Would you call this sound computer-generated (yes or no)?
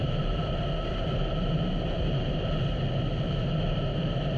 yes